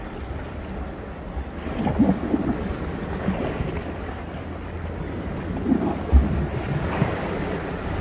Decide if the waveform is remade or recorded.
recorded